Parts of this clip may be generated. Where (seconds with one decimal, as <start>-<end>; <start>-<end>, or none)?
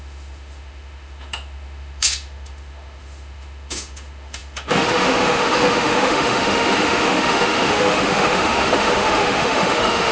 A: 0.0-10.1